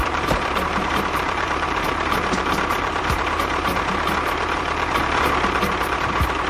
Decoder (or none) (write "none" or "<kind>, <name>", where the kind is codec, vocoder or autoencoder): vocoder, BigVGAN v2